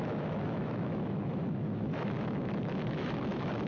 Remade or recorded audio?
remade